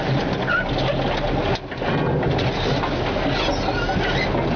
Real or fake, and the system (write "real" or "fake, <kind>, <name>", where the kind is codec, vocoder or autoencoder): real